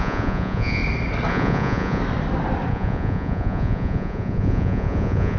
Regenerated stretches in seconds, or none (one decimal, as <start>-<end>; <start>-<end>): 0.0-0.8; 1.3-2.0; 2.7-5.4